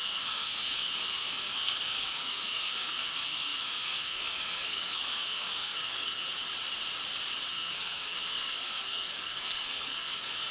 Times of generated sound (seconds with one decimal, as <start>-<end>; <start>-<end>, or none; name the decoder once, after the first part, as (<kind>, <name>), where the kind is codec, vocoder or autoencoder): 0.0-6.3 (codec, SNAC); 7.5-10.5